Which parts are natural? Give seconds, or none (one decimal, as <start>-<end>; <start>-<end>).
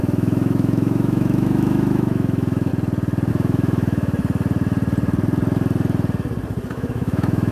2.7-3.3; 4.2-6.7